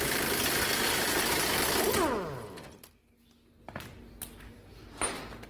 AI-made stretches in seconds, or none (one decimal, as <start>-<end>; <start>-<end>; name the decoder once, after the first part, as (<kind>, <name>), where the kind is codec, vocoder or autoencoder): none